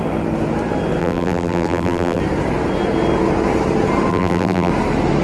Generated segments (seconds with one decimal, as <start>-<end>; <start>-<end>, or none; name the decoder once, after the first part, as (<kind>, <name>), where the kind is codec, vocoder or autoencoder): 1.0-2.2 (vocoder, BigVGAN v2); 4.1-4.7